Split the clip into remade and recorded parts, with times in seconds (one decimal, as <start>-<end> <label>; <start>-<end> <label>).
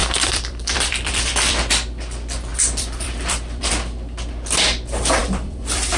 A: 0.0-1.7 remade; 1.7-2.5 recorded; 2.5-3.7 remade; 3.7-5.2 recorded; 5.2-6.0 remade